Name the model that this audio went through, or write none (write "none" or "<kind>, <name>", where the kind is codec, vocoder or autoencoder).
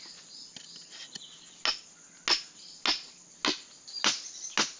none